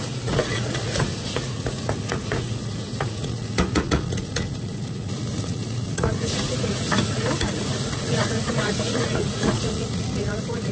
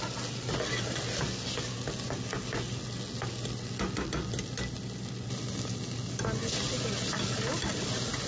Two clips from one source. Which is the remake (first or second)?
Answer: first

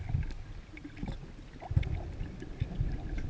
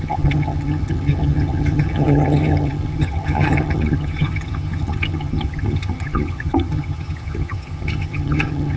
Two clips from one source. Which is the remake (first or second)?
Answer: second